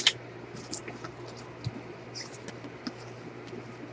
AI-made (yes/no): no